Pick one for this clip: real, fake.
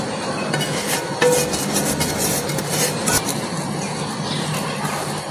real